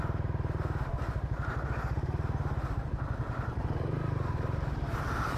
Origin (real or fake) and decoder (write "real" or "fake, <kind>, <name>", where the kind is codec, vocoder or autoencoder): fake, vocoder, BigVGAN v2